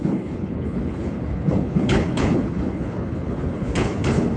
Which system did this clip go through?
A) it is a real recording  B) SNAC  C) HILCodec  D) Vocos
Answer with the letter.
C